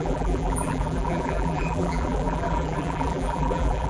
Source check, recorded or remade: remade